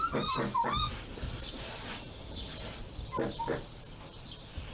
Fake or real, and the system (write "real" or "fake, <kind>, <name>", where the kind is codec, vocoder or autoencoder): real